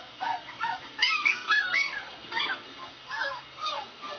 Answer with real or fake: fake